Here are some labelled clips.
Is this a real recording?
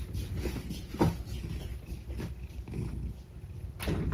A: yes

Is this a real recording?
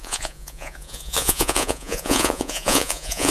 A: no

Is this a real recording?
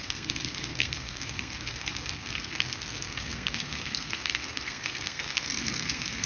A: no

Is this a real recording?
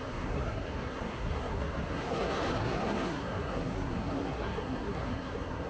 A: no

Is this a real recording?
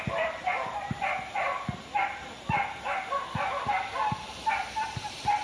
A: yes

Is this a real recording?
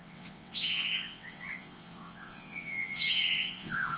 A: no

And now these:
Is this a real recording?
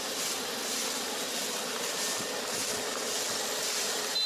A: yes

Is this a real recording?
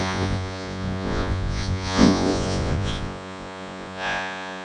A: no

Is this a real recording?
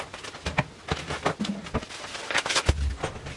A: yes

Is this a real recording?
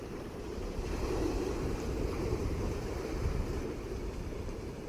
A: no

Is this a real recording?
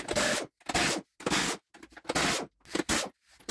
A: yes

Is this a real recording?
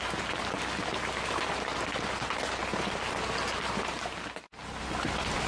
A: yes